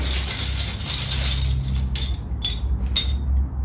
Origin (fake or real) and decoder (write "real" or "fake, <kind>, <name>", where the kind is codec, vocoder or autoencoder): real